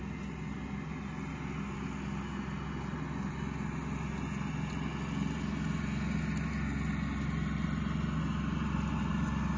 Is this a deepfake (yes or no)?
no